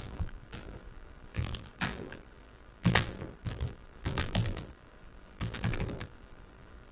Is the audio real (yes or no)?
no